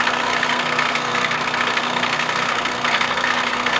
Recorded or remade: remade